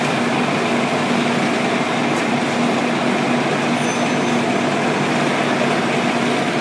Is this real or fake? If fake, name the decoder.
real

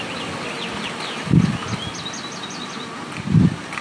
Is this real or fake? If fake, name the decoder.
real